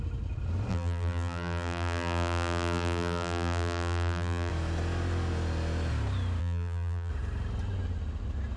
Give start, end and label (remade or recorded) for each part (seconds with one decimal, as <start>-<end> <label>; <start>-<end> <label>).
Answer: 0.0-0.7 recorded; 0.7-4.5 remade; 4.5-6.4 recorded; 6.4-7.1 remade; 7.1-8.6 recorded